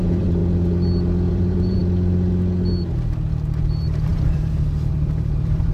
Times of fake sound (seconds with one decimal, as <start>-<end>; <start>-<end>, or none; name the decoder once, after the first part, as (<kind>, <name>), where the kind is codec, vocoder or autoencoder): 0.0-0.4 (vocoder, BigVGAN v2); 1.3-1.8; 3.6-5.7